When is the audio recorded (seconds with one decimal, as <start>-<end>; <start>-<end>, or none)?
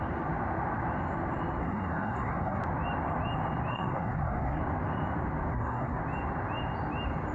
0.0-1.6; 2.6-3.7; 4.6-5.5; 6.0-7.3